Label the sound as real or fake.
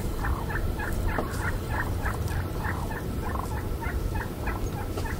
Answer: fake